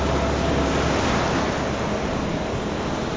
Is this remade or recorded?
recorded